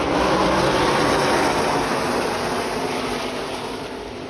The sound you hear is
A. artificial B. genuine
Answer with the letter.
B